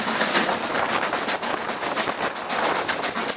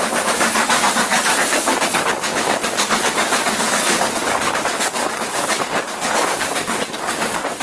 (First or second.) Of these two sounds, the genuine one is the first